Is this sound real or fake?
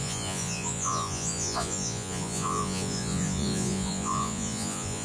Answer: fake